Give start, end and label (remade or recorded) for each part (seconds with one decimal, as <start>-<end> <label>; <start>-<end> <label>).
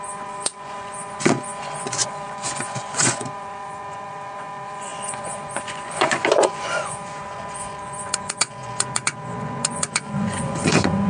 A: 0.0-11.1 remade